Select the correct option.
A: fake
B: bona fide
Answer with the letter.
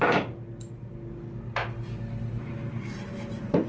B